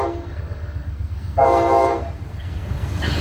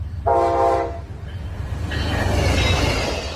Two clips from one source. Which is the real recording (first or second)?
second